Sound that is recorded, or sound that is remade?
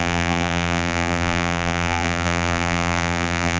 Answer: remade